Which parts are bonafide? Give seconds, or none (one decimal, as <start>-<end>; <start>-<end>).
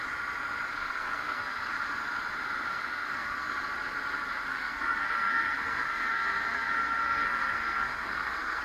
0.0-0.8; 1.7-2.7; 3.5-4.5